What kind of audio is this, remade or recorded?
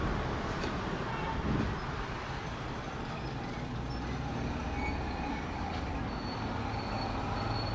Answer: recorded